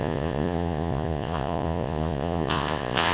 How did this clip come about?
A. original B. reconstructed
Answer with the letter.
B